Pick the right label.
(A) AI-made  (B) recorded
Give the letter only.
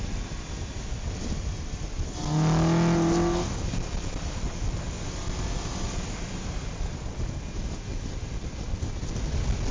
B